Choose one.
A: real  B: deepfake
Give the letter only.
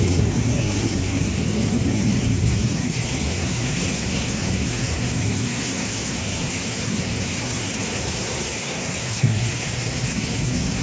B